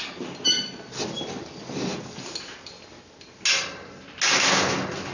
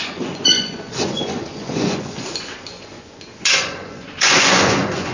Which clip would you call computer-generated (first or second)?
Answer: second